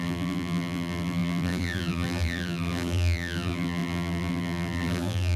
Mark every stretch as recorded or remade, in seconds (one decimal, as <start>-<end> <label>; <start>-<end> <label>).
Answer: 0.0-5.4 remade